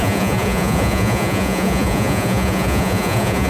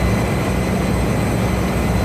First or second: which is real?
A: second